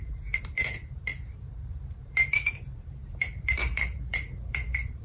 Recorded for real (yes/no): no